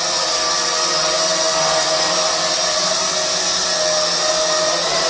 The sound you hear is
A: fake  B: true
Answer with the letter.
B